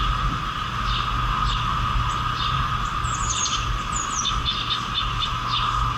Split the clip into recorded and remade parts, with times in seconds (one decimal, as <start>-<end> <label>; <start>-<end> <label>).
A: 0.0-1.7 recorded; 1.7-5.3 remade; 5.3-6.0 recorded